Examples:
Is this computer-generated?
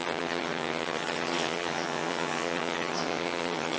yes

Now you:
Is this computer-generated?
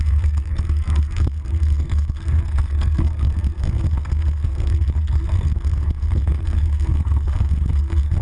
yes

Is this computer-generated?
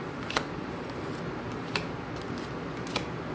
no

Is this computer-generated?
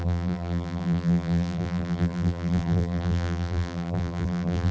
yes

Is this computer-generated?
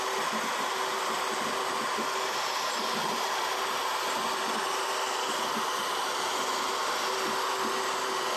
no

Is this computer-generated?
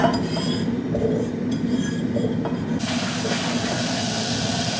no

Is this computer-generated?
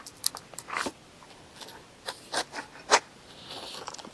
no